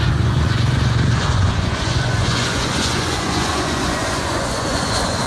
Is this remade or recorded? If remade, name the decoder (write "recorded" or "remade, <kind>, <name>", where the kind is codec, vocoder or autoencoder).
remade, vocoder, Vocos